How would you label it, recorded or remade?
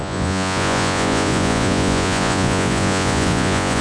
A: remade